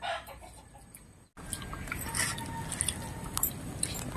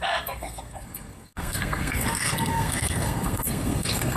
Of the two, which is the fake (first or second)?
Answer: second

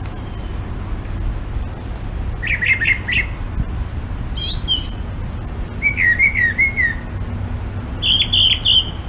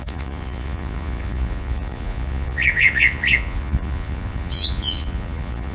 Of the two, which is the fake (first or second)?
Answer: second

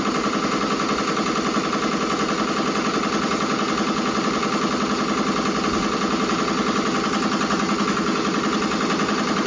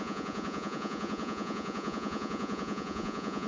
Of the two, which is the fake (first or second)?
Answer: second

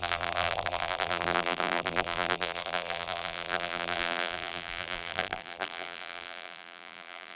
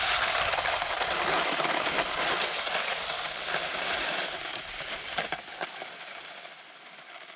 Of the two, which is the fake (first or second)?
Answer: first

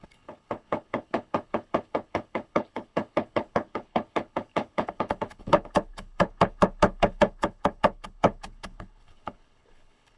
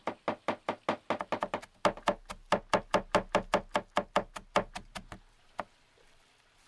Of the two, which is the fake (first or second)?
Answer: first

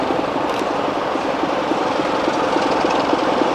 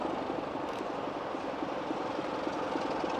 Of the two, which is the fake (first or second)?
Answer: first